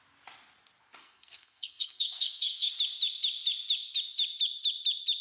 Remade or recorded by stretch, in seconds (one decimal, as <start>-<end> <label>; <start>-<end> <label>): 0.0-1.0 recorded; 1.0-2.7 remade; 2.7-5.2 recorded